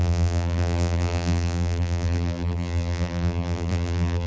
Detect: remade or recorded remade